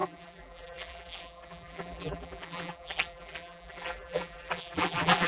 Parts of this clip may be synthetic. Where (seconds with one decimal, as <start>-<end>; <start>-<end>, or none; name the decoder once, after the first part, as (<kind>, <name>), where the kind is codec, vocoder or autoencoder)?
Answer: 0.0-5.3 (vocoder, BigVGAN v2)